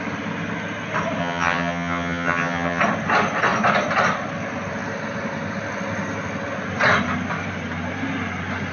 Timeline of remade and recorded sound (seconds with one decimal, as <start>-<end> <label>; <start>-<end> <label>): 0.0-1.2 recorded; 1.2-2.8 remade; 2.8-8.7 recorded